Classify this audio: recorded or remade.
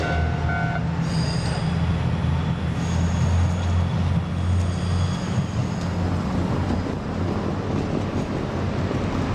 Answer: recorded